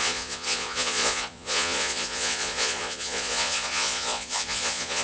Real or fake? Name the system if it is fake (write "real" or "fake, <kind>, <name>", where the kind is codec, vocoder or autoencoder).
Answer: fake, vocoder, Vocos